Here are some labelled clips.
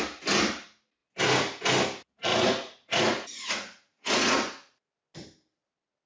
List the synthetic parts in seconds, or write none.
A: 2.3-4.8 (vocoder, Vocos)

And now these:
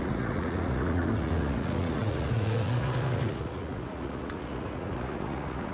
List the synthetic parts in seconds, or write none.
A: 0.0-5.7 (vocoder, Vocos)

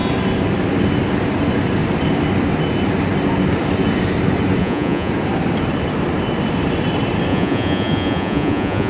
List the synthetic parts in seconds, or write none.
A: 4.6-5.1 (vocoder, Vocos); 7.3-8.9

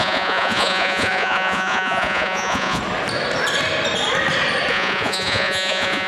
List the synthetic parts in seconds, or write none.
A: 0.0-2.8 (vocoder, Vocos); 4.7-6.1

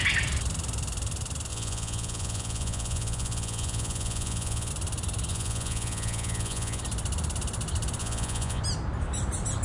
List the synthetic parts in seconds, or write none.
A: 1.5-4.7 (vocoder, Vocos); 5.3-6.8; 8.0-8.6